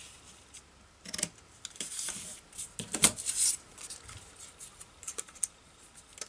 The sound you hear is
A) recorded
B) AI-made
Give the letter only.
A